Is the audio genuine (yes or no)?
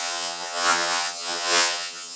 no